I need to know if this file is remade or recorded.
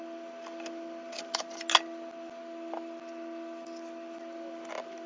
recorded